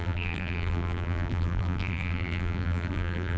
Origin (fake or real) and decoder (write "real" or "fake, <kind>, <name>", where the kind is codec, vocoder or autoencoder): fake, vocoder, BigVGAN v2